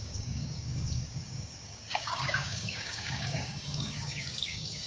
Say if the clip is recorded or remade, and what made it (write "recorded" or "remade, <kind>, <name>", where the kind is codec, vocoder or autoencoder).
remade, codec, DAC